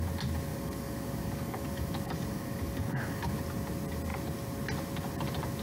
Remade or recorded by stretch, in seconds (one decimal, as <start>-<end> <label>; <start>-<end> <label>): 0.0-0.5 recorded; 0.5-3.2 remade; 3.2-5.6 recorded